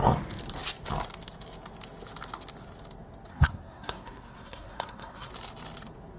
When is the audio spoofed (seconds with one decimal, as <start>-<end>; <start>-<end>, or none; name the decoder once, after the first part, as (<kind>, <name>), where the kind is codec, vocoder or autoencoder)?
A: 3.3-5.3 (codec, SNAC)